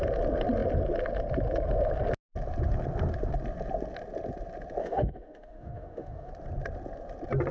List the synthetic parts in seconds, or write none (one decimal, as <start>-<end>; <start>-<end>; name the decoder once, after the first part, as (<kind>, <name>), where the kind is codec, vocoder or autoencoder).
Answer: 4.8-6.3 (autoencoder, DAC-VAE)